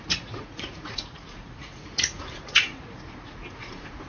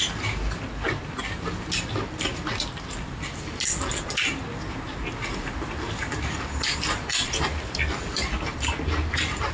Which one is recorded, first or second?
second